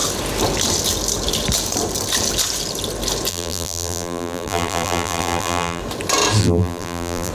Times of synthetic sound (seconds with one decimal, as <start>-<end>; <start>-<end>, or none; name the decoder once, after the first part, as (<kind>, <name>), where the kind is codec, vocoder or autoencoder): 3.3-5.8 (vocoder, BigVGAN v2); 6.4-7.3

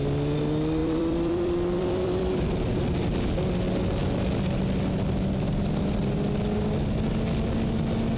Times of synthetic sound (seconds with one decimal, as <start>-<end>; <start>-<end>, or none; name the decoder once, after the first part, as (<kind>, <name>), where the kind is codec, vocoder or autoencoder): 0.8-2.8 (vocoder, BigVGAN v2); 4.0-4.6